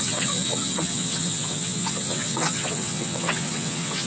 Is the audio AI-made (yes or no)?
yes